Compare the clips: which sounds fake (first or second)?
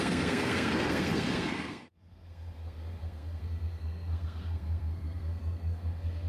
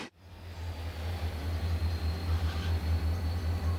first